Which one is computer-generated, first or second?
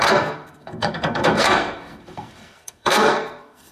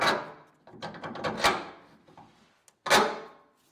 first